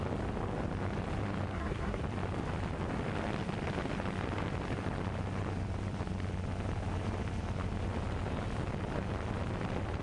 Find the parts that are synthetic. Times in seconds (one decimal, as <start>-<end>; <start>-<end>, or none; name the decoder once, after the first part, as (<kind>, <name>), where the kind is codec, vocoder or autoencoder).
1.5-2.0 (codec, SNAC)